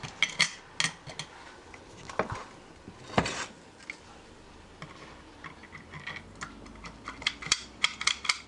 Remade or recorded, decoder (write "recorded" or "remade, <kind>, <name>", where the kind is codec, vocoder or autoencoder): recorded